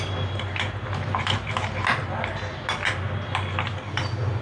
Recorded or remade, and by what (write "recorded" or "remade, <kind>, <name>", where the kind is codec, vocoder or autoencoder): recorded